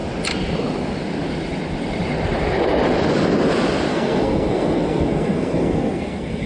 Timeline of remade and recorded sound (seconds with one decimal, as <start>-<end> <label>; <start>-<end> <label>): 0.0-3.9 recorded; 3.9-6.5 remade